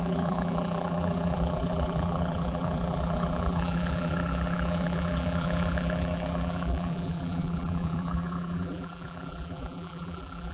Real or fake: fake